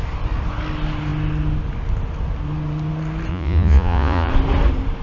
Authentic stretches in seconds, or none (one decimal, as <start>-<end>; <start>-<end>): 0.0-3.3; 4.3-5.0